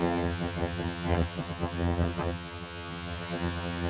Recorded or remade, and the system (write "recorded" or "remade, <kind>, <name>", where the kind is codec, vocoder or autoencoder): remade, vocoder, HiFi-GAN